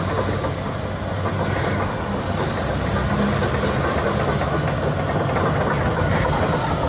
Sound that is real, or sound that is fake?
real